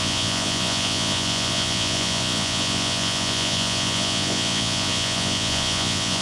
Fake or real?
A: fake